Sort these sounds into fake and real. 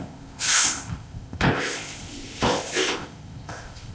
fake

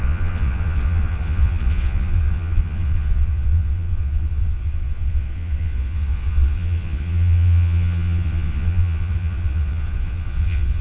fake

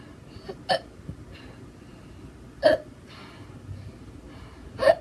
real